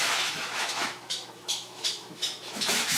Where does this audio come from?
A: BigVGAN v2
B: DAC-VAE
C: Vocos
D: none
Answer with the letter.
B